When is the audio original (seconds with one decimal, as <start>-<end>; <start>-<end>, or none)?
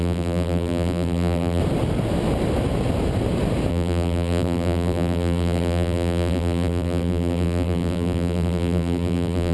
1.6-3.7